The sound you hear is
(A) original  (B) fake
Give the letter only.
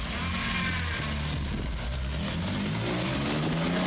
A